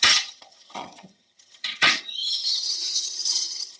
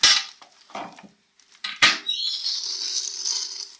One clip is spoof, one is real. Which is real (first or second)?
second